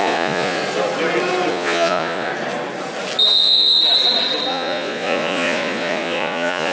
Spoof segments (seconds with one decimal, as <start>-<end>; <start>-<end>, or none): 0.0-0.6; 1.5-2.3; 3.3-3.8; 4.5-6.7